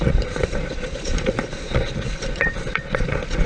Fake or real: fake